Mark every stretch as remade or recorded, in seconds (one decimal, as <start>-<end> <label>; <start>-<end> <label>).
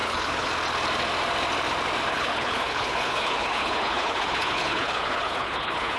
0.0-0.5 remade; 0.5-2.1 recorded; 2.1-6.0 remade